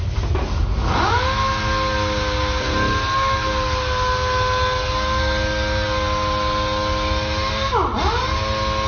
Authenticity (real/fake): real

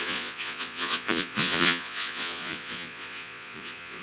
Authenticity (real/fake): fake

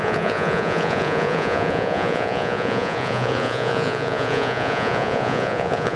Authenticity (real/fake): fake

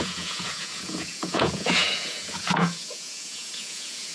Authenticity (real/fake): fake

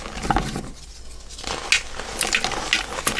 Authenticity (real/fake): real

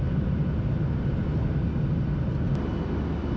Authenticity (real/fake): real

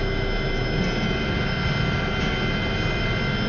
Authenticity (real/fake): real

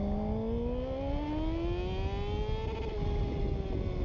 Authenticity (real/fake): real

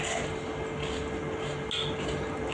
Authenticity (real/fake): real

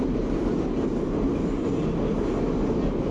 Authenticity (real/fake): real